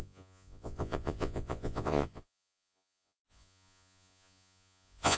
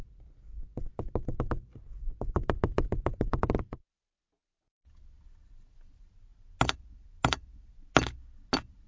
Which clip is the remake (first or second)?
first